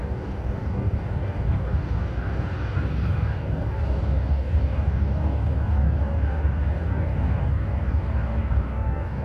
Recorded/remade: remade